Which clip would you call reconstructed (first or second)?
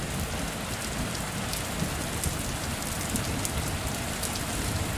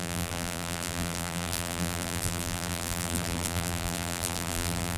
second